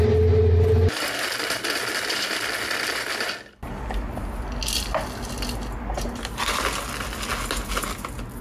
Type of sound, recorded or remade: recorded